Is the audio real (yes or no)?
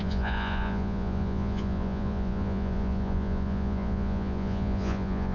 no